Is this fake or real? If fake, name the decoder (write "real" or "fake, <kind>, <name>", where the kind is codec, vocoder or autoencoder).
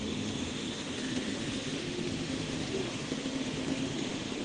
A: fake, autoencoder, DAC-VAE